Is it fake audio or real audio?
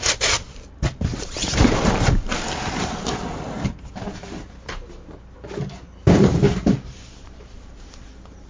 fake